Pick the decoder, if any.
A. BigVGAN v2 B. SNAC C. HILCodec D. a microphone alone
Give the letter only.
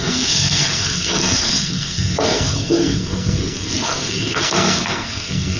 B